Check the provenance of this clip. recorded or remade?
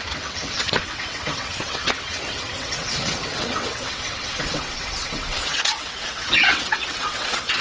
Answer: remade